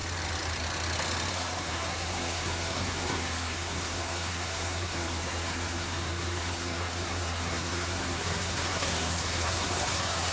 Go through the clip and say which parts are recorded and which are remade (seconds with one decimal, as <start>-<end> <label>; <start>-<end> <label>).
0.0-1.3 recorded; 1.3-10.3 remade